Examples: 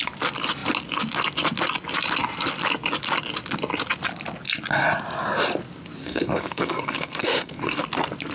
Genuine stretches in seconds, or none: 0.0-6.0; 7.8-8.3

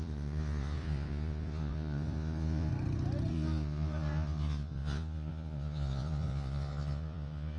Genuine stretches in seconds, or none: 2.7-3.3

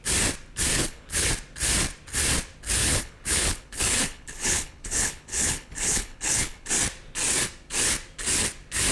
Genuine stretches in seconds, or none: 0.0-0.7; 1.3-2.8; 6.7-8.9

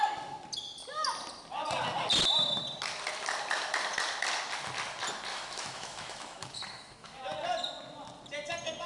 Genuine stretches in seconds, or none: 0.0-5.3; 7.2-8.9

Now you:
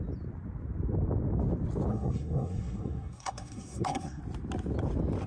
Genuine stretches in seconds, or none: 0.0-1.9; 4.2-5.3

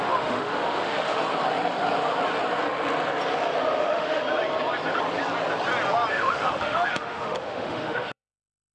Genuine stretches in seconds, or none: 1.2-3.8; 4.2-6.1

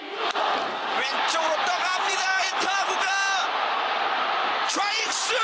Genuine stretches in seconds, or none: none